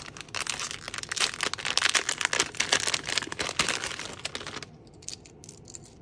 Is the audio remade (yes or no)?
no